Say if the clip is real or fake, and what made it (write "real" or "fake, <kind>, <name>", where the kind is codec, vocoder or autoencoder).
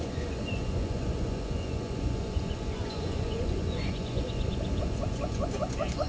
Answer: fake, vocoder, Vocos